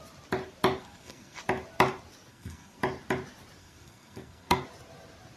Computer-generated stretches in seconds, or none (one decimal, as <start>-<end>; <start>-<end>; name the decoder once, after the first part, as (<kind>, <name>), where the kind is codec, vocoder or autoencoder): 0.8-1.4 (codec, SNAC); 2.3-2.8; 3.6-4.6